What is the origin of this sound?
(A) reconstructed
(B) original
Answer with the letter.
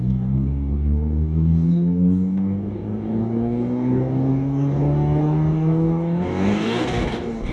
A